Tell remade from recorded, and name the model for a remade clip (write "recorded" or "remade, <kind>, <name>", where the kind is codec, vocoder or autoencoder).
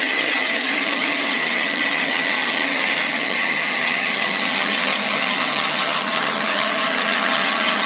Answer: remade, vocoder, HiFi-GAN